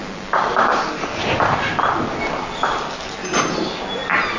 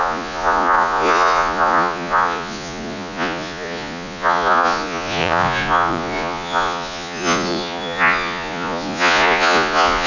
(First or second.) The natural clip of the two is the first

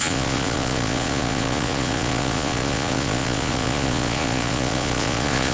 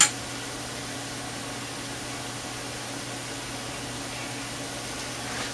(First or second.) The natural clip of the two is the second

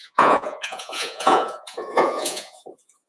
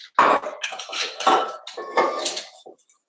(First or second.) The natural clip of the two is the second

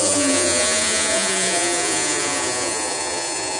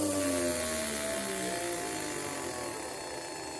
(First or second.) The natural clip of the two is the second